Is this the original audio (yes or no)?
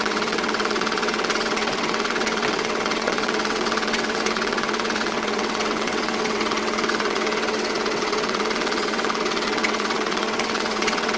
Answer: no